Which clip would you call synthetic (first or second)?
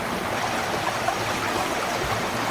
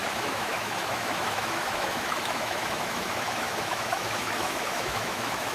second